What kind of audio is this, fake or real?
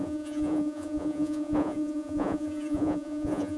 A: fake